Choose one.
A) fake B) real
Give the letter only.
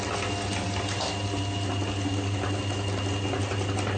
B